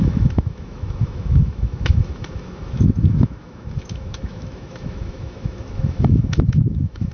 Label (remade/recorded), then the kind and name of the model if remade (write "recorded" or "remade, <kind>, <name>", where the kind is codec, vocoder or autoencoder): remade, autoencoder, DAC-VAE